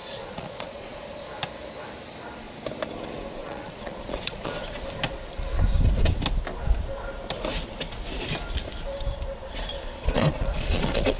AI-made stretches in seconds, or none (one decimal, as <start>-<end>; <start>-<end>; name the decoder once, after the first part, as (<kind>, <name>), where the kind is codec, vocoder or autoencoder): 0.0-1.0 (vocoder, Vocos); 3.4-4.5; 9.7-11.2